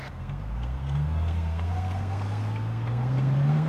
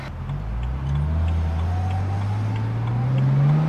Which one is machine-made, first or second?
first